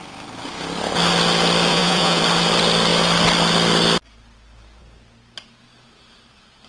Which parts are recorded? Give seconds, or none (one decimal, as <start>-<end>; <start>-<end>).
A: 0.0-1.7; 2.2-6.7